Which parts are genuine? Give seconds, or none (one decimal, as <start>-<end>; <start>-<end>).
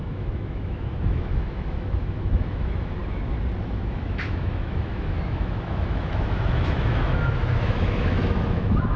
3.0-3.6